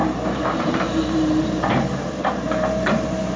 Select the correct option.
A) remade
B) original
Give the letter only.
A